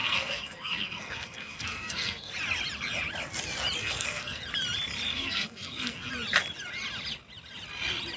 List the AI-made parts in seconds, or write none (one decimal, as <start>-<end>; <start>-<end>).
0.0-2.3; 3.8-4.4; 5.1-6.1